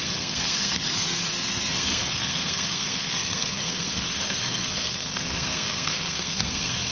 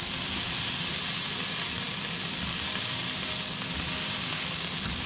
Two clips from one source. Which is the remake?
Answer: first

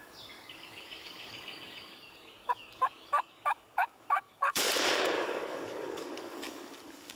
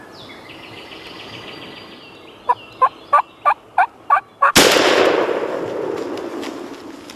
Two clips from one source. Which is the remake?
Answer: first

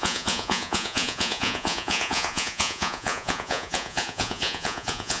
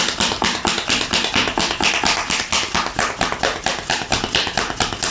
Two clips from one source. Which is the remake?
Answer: first